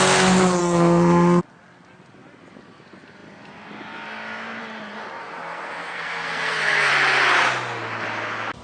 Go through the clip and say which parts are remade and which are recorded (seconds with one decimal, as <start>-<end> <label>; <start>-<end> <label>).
0.0-0.6 recorded; 0.6-1.4 remade; 1.4-5.2 recorded; 5.2-6.9 remade; 6.9-8.6 recorded